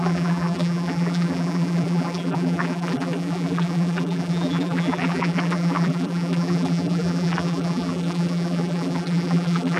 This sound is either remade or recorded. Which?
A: remade